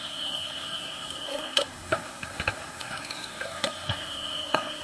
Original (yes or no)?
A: no